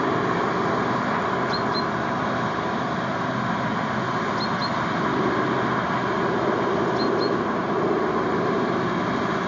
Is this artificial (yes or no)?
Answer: no